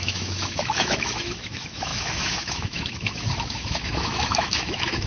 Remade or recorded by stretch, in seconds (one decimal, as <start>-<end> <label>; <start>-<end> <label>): 0.0-5.1 remade